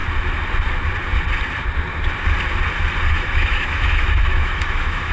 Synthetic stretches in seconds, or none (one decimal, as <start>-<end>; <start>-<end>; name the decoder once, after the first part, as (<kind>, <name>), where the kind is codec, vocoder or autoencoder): 3.1-5.1 (autoencoder, DAC-VAE)